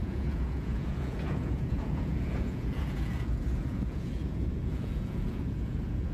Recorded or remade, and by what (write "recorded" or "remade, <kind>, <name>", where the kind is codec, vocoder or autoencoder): remade, vocoder, Vocos